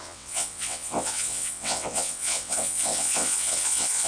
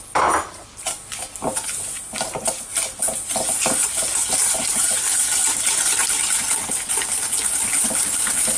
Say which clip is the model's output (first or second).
first